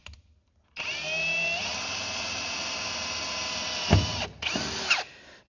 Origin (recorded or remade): recorded